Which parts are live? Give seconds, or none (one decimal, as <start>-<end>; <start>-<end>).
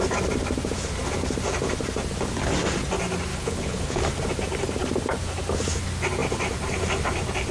0.0-3.3; 4.0-7.5